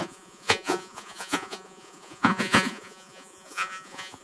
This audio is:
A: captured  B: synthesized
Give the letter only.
B